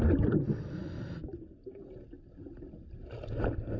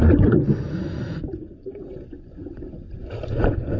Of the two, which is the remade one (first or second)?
second